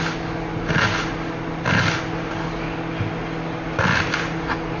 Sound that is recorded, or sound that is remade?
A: recorded